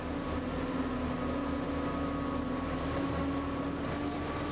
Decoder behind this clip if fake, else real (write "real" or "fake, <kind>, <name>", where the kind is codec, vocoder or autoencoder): real